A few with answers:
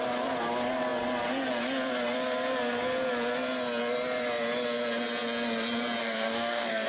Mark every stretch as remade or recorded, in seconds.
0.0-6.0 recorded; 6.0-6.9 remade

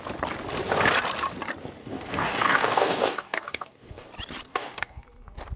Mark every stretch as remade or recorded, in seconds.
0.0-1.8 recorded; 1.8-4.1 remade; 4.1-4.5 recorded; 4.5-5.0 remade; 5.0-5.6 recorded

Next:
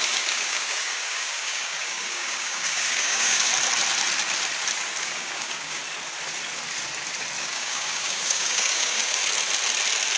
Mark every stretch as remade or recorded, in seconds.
0.0-3.5 remade; 3.5-5.0 recorded; 5.0-5.8 remade; 5.8-7.4 recorded; 7.4-9.2 remade; 9.2-10.2 recorded